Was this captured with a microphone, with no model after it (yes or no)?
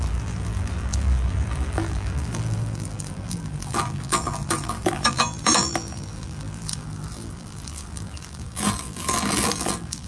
no